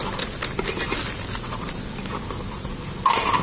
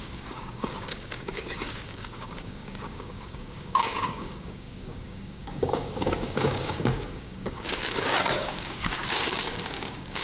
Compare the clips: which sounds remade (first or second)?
second